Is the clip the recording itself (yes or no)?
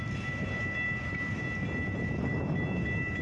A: yes